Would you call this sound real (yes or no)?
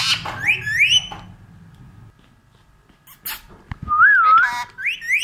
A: yes